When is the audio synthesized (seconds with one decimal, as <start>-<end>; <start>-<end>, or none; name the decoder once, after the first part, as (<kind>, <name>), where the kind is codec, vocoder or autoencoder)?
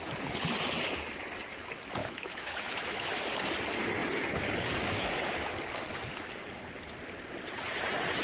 2.0-3.1 (autoencoder, DAC-VAE)